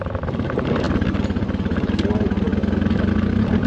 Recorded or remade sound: recorded